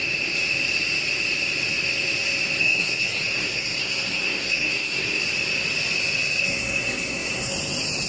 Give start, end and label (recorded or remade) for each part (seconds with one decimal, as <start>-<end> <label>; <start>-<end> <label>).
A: 0.0-2.6 recorded; 2.6-5.2 remade; 5.2-6.4 recorded; 6.4-7.5 remade; 7.5-8.1 recorded